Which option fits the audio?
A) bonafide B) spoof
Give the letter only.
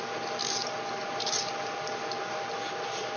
B